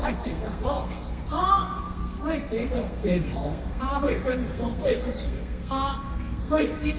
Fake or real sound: fake